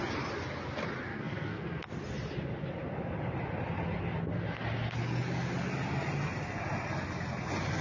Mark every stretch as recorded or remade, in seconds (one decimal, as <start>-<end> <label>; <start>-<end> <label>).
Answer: 0.0-1.1 recorded; 1.1-1.8 remade; 1.8-7.8 recorded